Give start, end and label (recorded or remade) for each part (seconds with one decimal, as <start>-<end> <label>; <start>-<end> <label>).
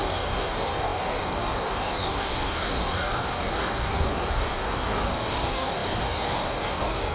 0.0-7.1 remade